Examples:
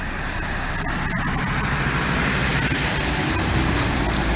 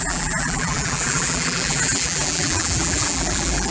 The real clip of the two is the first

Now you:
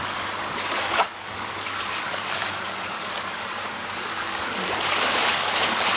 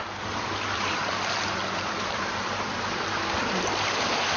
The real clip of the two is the second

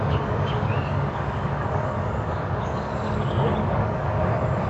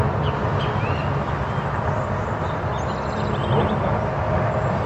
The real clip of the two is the second